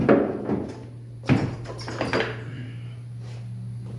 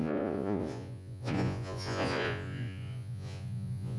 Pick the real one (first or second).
first